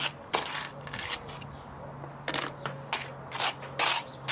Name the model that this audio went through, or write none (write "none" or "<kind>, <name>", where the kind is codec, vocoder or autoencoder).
none